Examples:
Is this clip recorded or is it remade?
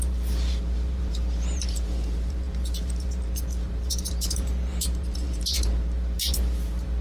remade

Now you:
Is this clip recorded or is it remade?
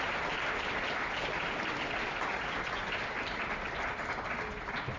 remade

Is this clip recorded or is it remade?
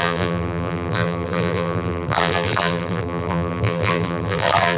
remade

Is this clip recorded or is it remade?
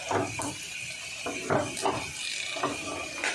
recorded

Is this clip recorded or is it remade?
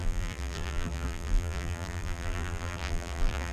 remade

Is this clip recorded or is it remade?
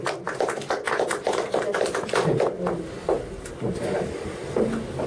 recorded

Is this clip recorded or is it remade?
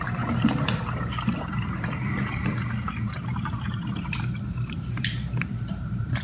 remade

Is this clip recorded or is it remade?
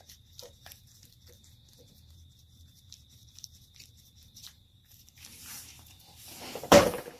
remade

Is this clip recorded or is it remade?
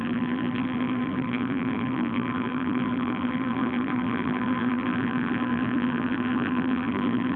remade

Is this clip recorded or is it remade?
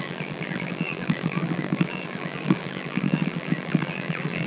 remade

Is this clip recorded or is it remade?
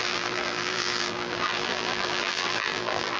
remade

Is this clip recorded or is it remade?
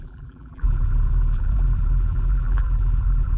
remade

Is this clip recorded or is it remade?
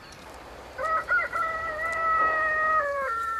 remade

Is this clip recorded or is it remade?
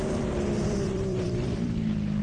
remade